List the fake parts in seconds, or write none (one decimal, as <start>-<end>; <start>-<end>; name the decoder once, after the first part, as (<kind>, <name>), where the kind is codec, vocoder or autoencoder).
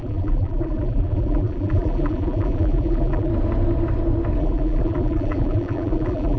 0.0-3.3 (vocoder, BigVGAN v2); 4.4-6.4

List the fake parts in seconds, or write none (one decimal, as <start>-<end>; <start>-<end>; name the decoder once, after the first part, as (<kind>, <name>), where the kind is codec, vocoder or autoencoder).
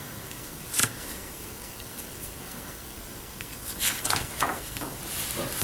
0.0-5.0 (codec, SNAC)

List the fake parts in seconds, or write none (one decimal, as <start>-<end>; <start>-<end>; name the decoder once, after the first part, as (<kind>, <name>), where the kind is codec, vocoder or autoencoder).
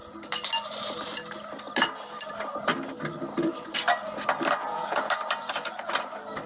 4.6-5.1 (vocoder, Vocos)